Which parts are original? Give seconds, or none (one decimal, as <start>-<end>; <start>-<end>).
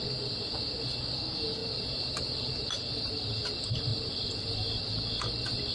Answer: 0.0-5.7